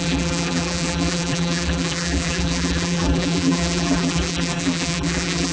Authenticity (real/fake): fake